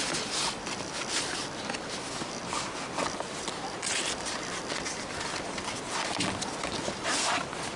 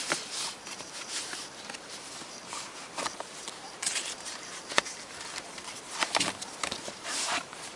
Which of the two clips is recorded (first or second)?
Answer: first